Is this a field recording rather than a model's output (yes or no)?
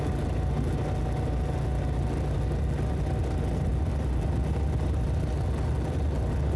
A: yes